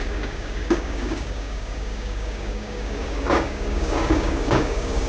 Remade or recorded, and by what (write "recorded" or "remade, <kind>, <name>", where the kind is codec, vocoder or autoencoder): remade, codec, DAC